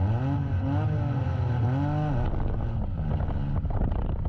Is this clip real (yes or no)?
yes